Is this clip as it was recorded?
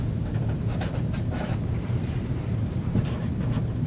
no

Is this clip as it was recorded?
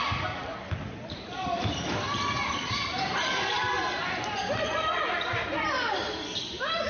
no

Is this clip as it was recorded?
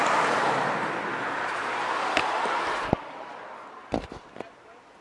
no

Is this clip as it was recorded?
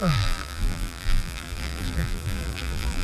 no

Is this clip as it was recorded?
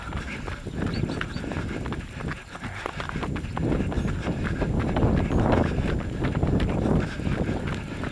yes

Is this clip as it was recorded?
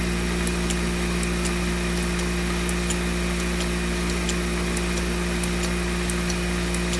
yes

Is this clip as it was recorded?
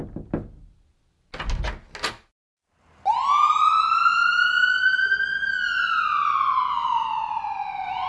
yes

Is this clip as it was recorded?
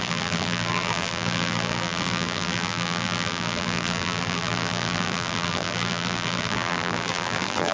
no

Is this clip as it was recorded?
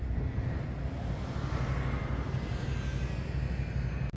yes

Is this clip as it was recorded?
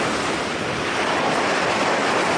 yes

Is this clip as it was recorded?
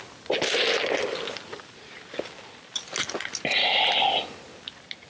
yes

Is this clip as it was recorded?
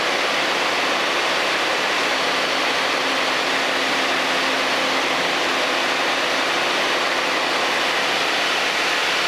yes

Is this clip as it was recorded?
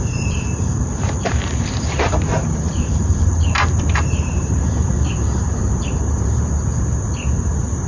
no